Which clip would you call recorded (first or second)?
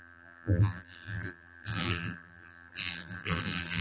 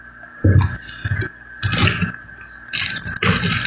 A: second